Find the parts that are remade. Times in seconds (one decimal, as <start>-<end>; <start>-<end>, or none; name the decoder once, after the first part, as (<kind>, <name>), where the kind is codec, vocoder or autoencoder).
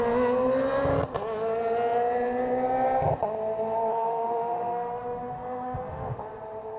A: 3.9-6.2 (autoencoder, DAC-VAE)